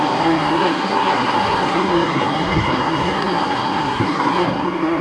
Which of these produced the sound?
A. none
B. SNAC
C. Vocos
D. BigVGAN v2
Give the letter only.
B